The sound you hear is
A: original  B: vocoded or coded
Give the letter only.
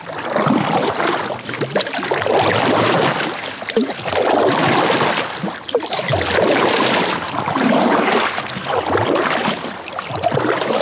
A